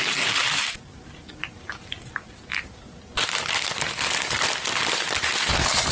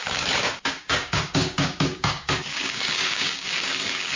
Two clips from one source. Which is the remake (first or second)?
second